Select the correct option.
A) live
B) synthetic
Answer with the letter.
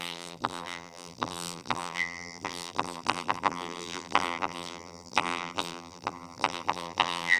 B